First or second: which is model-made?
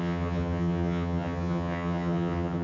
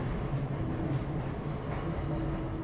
first